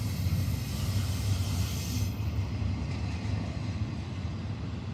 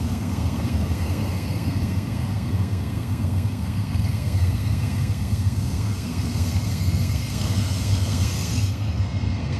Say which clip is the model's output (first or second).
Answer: second